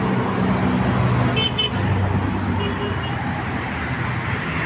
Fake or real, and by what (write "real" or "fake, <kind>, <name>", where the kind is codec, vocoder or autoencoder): real